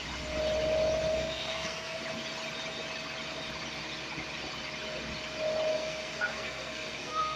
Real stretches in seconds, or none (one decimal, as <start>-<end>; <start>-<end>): 0.0-1.1; 2.0-5.7